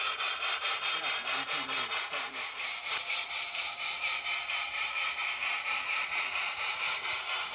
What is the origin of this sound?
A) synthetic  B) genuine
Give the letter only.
A